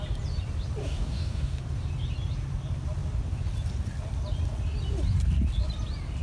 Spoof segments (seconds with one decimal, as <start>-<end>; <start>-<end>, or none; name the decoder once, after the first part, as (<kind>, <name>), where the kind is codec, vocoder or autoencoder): 0.8-1.6 (codec, DAC)